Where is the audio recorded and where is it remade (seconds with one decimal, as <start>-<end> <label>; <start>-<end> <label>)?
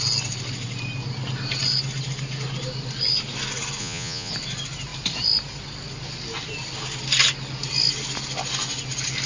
0.0-3.8 recorded; 3.8-4.3 remade; 4.3-9.3 recorded